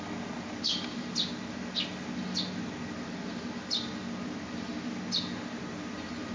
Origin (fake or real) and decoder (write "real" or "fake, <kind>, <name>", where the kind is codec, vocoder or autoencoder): real